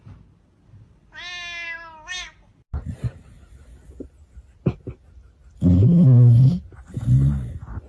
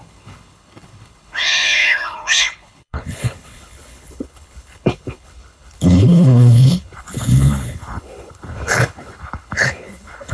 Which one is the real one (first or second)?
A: first